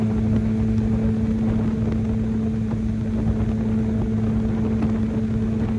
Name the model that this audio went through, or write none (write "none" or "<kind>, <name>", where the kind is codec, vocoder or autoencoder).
none